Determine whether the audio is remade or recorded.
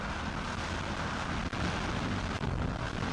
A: recorded